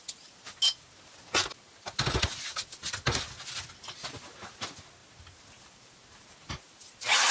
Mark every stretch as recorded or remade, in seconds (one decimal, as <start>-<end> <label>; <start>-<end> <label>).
0.0-7.3 recorded

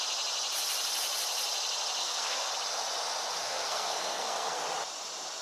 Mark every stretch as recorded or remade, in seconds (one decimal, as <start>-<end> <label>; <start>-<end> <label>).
0.0-2.0 recorded; 2.0-2.5 remade; 2.5-3.4 recorded; 3.4-4.6 remade; 4.6-5.4 recorded

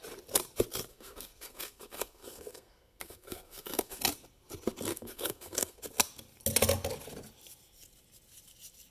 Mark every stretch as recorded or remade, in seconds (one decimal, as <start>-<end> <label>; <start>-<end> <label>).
0.0-0.9 recorded; 0.9-4.0 remade; 4.0-4.9 recorded; 4.9-5.8 remade; 5.8-8.9 recorded

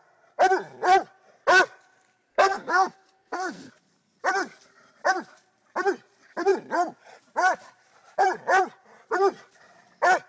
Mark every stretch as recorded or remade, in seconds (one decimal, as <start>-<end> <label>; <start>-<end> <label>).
0.0-2.3 recorded; 2.3-3.7 remade; 3.7-10.3 recorded

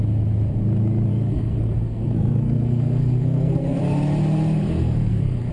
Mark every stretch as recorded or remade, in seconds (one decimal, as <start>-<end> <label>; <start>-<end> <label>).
0.0-1.1 recorded; 1.1-3.8 remade; 3.8-4.6 recorded; 4.6-5.5 remade

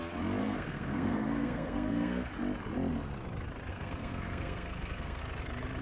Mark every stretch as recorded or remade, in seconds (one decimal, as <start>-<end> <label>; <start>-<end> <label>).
0.0-0.4 recorded; 0.4-2.3 remade; 2.3-3.7 recorded; 3.7-5.2 remade; 5.2-5.8 recorded